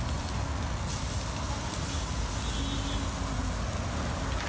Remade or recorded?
recorded